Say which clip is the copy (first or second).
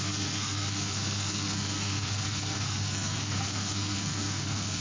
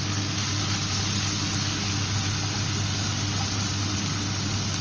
first